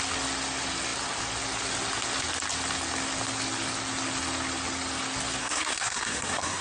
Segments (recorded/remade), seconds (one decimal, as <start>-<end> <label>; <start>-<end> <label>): 0.0-5.4 recorded; 5.4-6.6 remade